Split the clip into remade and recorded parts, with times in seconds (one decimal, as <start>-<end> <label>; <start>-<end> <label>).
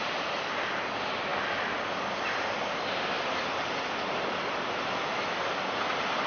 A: 0.0-6.3 recorded